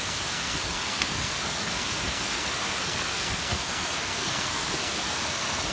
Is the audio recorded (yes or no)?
no